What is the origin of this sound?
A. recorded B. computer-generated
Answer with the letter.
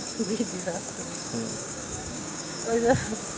B